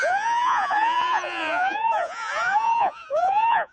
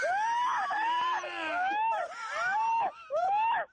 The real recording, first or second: second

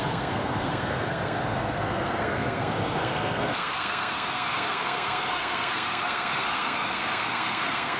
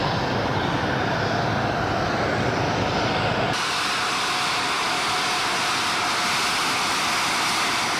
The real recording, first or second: second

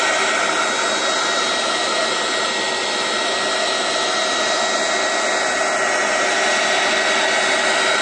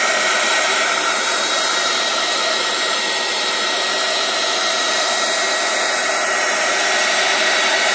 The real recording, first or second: first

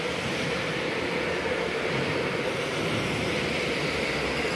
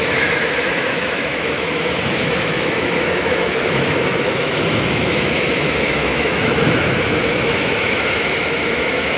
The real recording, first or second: first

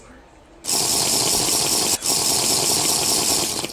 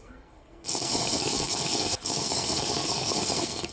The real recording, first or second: first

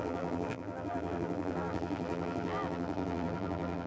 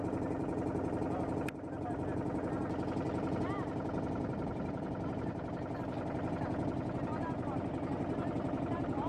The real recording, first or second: second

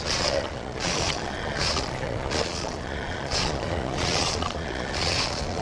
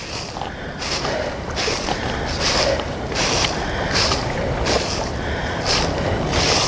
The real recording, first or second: second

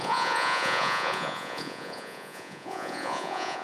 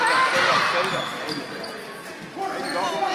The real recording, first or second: second